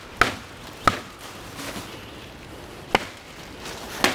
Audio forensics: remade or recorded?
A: recorded